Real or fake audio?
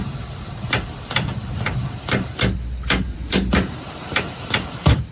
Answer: fake